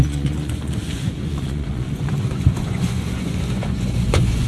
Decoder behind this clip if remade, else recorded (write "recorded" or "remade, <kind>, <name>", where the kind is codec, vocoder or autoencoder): remade, vocoder, Vocos